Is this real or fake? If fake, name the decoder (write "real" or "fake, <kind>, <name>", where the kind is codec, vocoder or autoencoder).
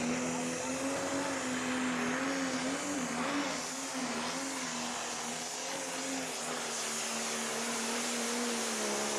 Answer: real